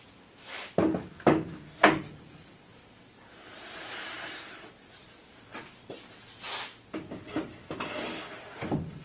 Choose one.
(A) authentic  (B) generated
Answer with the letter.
A